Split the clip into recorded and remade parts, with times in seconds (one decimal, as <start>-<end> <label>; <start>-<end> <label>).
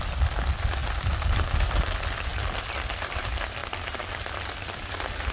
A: 0.0-2.3 remade; 2.3-2.9 recorded; 2.9-3.6 remade; 3.6-4.6 recorded; 4.6-5.3 remade